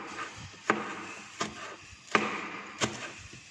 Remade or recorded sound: recorded